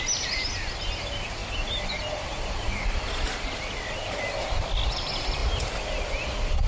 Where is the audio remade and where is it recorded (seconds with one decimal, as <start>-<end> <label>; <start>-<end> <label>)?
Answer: 0.0-1.4 recorded; 1.4-3.4 remade; 3.4-6.7 recorded

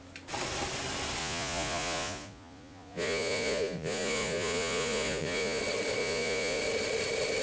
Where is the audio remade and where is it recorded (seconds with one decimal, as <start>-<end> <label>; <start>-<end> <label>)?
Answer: 0.0-1.2 recorded; 1.2-5.6 remade; 5.6-6.0 recorded; 6.0-6.6 remade; 6.6-7.4 recorded

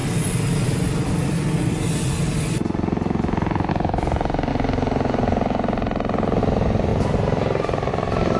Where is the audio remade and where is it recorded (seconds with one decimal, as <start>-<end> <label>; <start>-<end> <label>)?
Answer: 0.0-4.5 remade; 4.5-6.4 recorded; 6.4-8.4 remade

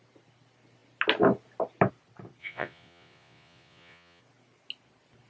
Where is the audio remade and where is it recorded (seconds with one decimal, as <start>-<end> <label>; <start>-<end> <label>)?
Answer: 0.0-2.4 recorded; 2.4-4.2 remade; 4.2-5.3 recorded

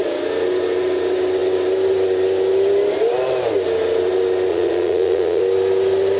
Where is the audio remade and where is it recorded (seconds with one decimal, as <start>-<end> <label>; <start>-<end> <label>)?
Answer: 0.0-4.5 recorded; 4.5-5.4 remade; 5.4-6.2 recorded

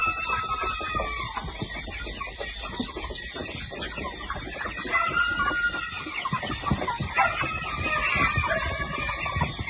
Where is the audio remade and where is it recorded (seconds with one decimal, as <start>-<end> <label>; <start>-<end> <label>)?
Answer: 0.0-9.7 recorded

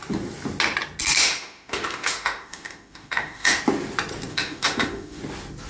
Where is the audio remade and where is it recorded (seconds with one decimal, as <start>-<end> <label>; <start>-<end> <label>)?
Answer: 0.0-1.2 recorded; 1.2-3.6 remade; 3.6-4.3 recorded; 4.3-5.2 remade; 5.2-5.7 recorded

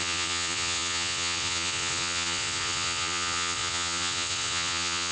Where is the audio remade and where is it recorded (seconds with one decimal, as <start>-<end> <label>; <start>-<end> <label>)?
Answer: 0.0-5.1 remade